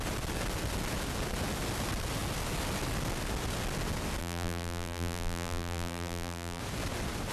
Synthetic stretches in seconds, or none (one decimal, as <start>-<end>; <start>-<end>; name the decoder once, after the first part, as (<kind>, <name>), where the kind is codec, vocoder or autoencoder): 4.2-6.6 (vocoder, BigVGAN v2)